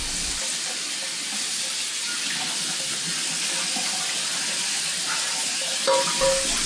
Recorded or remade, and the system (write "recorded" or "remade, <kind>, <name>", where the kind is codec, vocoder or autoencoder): recorded